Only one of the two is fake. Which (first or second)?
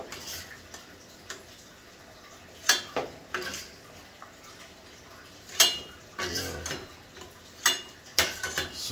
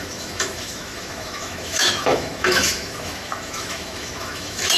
second